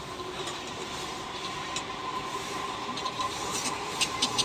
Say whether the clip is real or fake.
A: fake